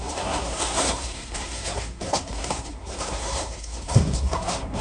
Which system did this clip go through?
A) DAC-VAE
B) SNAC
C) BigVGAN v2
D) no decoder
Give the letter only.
B